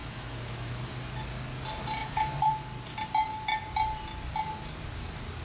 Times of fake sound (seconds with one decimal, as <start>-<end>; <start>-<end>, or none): 0.0-0.9; 2.0-2.5